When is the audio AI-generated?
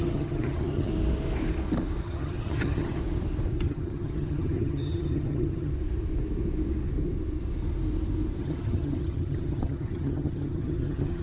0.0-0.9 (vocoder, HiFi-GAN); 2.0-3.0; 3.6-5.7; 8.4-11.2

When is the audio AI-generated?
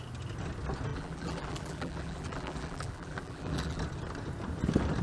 0.9-3.8 (vocoder, BigVGAN v2)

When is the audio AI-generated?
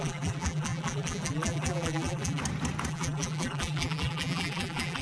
0.0-2.4 (vocoder, BigVGAN v2); 2.9-5.0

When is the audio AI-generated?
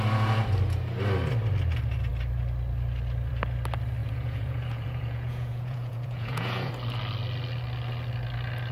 4.0-6.7 (vocoder, Vocos)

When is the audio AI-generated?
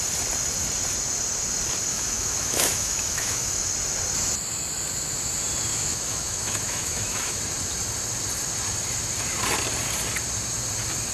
1.9-3.7 (autoencoder, DAC-VAE); 5.7-7.4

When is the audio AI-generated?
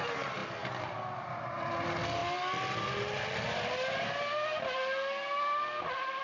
none